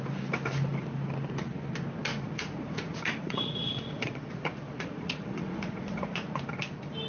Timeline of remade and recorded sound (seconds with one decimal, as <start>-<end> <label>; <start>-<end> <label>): 0.0-2.1 recorded; 2.1-6.4 remade; 6.4-7.1 recorded